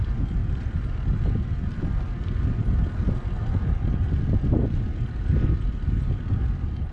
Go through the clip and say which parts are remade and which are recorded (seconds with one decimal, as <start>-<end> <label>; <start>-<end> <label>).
0.0-6.9 recorded